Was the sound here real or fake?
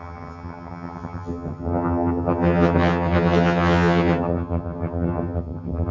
fake